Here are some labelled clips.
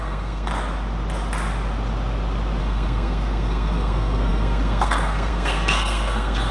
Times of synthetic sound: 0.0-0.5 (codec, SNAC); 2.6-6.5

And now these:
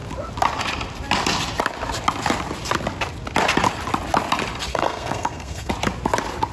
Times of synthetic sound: 4.7-5.7 (codec, SNAC)

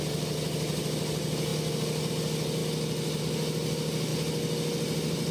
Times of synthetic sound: none